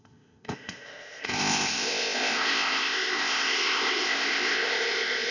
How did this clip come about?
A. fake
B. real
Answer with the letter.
A